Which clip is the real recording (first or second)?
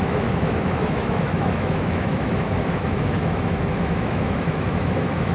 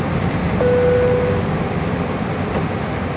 second